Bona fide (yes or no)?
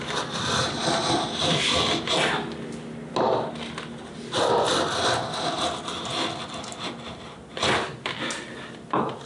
yes